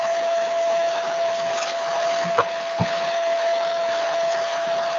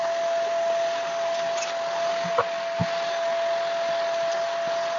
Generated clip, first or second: first